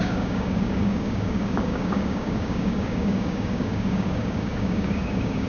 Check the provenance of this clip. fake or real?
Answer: fake